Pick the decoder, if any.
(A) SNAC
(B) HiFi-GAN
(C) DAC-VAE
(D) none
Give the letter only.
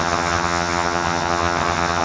B